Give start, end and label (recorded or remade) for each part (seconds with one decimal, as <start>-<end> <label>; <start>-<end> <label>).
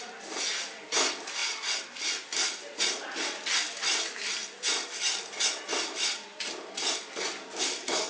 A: 0.0-8.1 recorded